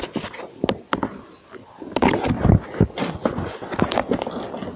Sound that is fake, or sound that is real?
real